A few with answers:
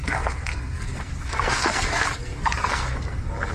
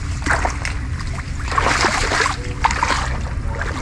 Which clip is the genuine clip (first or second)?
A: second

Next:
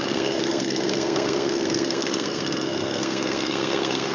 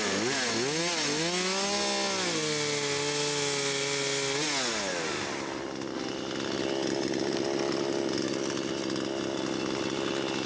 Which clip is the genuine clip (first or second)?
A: second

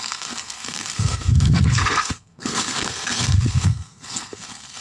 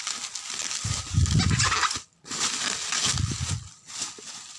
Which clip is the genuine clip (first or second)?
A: second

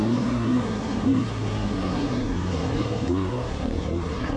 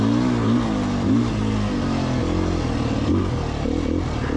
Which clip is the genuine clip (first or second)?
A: second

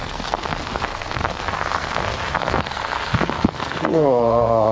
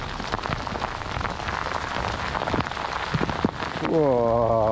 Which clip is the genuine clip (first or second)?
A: second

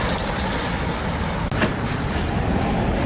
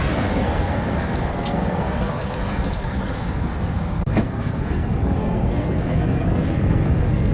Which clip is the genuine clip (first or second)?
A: first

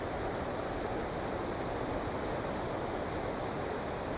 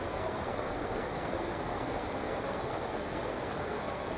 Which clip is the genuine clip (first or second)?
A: first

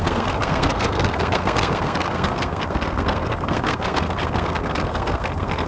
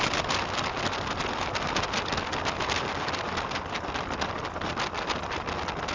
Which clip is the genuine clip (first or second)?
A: second